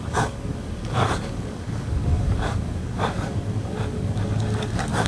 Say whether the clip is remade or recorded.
remade